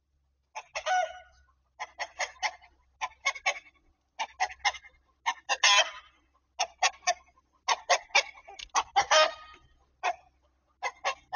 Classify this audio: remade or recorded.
recorded